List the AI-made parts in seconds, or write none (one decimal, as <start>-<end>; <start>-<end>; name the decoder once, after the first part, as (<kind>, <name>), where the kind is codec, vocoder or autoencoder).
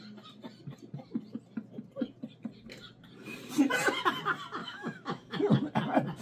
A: 4.6-5.5 (autoencoder, DAC-VAE)